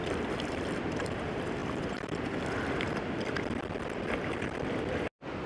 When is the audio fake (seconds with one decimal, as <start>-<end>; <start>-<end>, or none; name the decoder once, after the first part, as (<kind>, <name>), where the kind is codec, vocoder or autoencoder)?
0.0-0.9 (vocoder, BigVGAN v2); 1.6-4.8